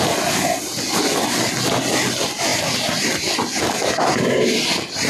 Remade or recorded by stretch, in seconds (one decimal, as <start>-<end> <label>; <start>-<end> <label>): 0.0-2.5 recorded; 2.5-3.6 remade; 3.6-5.1 recorded